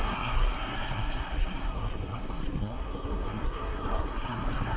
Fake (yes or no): yes